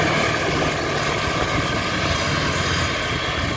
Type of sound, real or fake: real